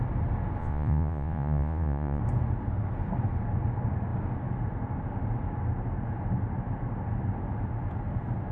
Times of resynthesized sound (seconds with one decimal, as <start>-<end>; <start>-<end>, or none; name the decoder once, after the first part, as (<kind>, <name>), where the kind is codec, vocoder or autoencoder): 0.6-2.2 (vocoder, Vocos)